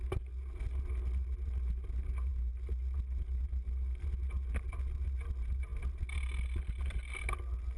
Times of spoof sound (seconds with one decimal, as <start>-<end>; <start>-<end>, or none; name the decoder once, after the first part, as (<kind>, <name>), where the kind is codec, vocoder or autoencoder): none